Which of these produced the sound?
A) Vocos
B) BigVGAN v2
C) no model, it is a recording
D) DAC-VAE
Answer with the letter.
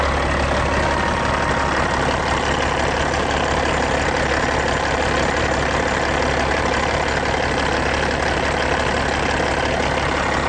C